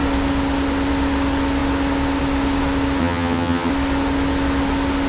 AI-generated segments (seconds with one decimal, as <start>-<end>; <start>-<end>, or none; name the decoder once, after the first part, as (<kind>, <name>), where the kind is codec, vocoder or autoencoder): 3.0-3.7 (vocoder, HiFi-GAN)